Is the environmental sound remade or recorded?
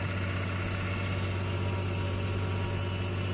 recorded